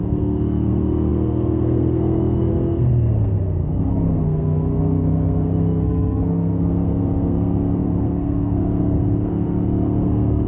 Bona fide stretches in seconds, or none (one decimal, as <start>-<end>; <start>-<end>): none